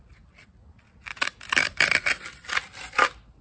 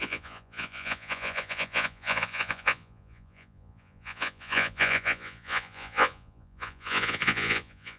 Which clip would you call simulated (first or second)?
second